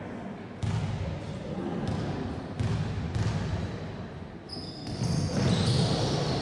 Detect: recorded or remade recorded